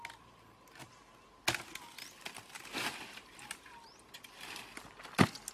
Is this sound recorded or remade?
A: recorded